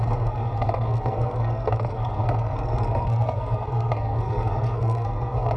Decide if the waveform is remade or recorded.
remade